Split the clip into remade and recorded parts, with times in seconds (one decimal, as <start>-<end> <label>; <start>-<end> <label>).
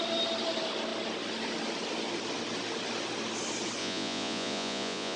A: 0.0-3.8 recorded; 3.8-5.2 remade